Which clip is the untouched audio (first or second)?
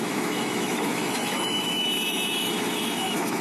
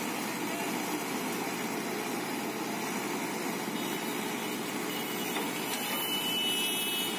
second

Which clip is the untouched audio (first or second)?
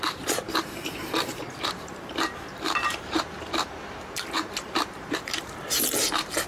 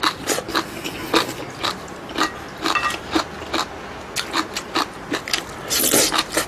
second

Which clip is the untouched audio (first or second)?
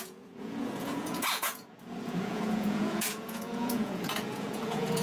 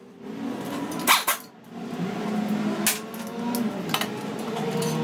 second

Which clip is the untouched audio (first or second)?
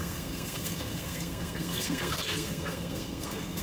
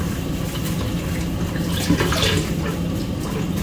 second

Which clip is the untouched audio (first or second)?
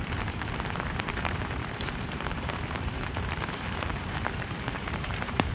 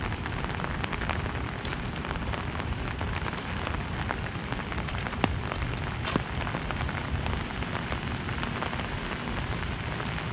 second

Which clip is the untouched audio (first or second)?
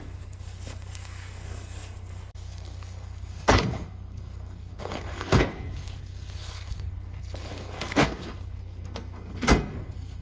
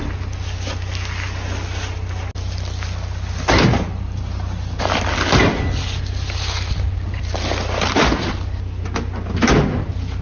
second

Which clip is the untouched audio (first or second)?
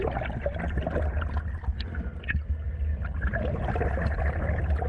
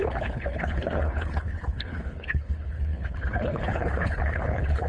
first